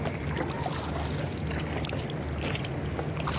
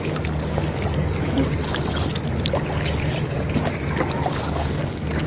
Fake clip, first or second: second